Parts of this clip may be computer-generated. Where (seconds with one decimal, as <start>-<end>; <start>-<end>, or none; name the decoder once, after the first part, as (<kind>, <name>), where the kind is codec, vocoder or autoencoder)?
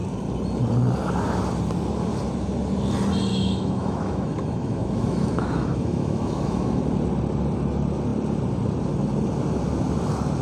3.3-6.8 (autoencoder, DAC-VAE)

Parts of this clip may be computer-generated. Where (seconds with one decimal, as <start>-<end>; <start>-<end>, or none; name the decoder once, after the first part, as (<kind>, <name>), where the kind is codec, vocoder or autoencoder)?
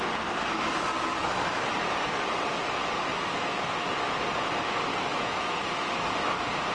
1.2-1.7 (autoencoder, DAC-VAE); 3.1-3.9; 4.9-6.3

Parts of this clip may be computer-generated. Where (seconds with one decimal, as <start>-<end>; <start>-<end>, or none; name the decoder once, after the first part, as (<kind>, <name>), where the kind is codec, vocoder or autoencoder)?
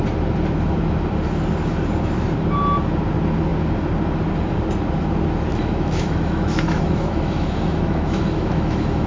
5.5-9.1 (autoencoder, DAC-VAE)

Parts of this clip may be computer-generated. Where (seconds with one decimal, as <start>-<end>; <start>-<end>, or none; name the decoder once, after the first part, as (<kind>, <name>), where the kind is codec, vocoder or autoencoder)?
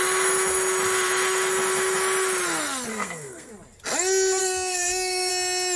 2.9-3.5 (codec, SNAC); 4.4-5.3